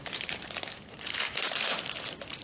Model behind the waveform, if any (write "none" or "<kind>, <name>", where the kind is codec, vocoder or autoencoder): vocoder, BigVGAN v2